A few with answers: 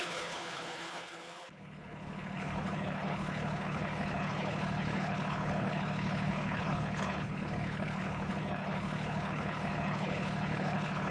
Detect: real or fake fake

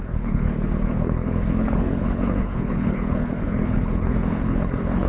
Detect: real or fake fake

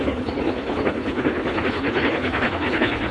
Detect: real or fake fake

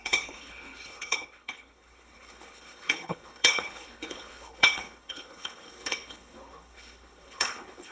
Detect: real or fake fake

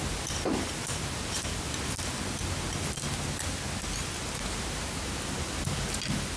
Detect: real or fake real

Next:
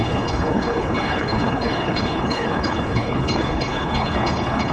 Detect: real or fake fake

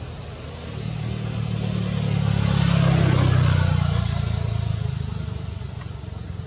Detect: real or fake real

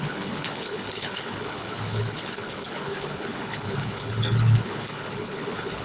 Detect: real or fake fake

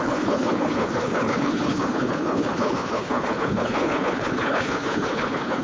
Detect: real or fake fake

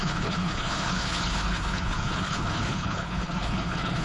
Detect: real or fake fake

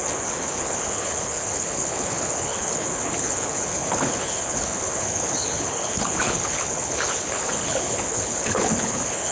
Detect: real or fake fake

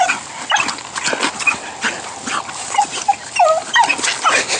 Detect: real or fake real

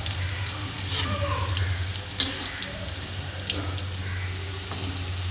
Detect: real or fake real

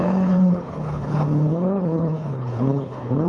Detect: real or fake fake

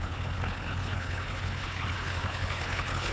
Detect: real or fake fake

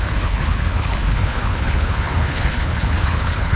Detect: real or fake fake